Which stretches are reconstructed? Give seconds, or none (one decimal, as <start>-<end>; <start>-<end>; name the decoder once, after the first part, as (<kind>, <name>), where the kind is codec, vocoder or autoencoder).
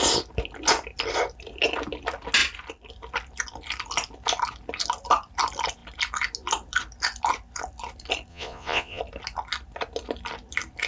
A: 8.3-9.0 (vocoder, Vocos)